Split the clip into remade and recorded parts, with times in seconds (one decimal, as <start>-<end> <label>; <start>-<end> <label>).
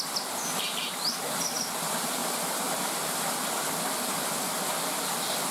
0.0-2.2 recorded; 2.2-3.0 remade; 3.0-5.5 recorded